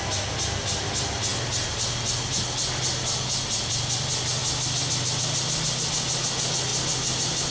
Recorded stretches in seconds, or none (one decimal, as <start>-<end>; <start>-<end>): 0.0-7.5